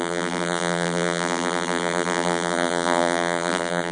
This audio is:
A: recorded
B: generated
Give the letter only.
B